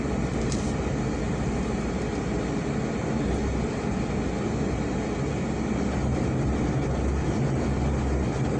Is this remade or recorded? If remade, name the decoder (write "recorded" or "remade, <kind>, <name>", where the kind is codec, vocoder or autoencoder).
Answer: recorded